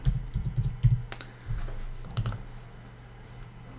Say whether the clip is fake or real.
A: real